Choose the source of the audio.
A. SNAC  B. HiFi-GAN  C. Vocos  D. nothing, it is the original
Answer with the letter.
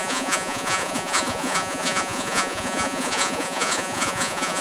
C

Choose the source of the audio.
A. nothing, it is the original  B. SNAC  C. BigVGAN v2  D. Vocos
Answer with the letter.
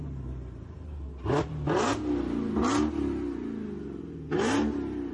A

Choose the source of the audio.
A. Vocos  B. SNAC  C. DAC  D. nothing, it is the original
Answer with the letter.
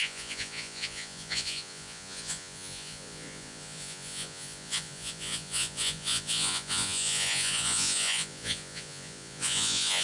A